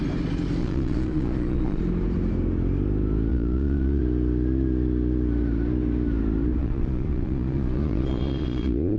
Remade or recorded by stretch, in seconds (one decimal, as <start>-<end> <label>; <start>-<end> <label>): 0.0-0.6 recorded; 0.6-1.8 remade; 1.8-3.3 recorded; 3.3-4.0 remade; 4.0-6.6 recorded; 6.6-9.0 remade